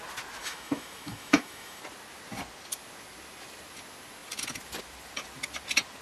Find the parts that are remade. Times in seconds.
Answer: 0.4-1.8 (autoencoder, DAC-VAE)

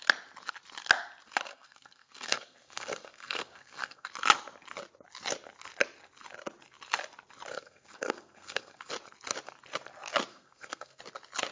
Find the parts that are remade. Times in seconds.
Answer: 1.5-4.1 (codec, SNAC); 7.5-8.9; 10.3-11.0

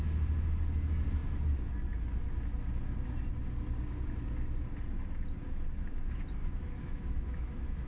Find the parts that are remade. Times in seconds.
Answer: 6.4-7.9 (autoencoder, DAC-VAE)